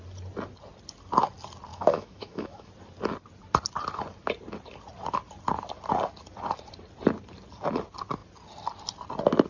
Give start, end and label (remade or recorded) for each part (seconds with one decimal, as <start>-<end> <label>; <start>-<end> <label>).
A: 0.0-1.7 recorded; 1.7-2.7 remade; 2.7-9.5 recorded